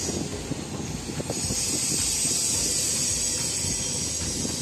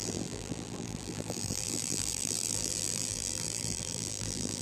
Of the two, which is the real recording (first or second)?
first